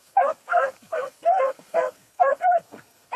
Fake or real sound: fake